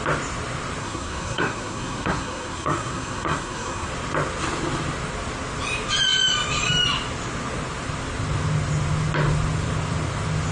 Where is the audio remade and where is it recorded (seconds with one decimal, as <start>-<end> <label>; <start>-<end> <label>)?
0.0-0.8 recorded; 0.8-3.9 remade; 3.9-10.5 recorded

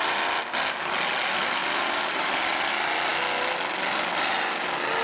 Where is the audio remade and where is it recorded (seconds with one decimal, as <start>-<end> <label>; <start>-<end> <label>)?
0.0-5.0 recorded